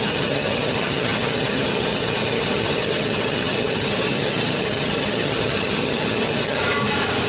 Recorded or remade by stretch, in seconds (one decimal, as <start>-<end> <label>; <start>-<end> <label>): 0.0-6.6 remade; 6.6-7.3 recorded